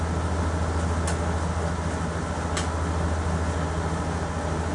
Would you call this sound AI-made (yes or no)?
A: no